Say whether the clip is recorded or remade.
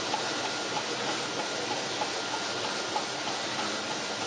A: recorded